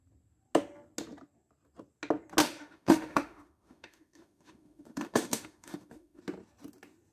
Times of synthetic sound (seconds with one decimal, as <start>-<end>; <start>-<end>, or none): 2.4-6.2